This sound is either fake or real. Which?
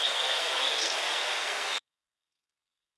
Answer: fake